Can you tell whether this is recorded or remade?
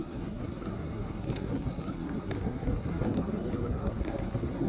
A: remade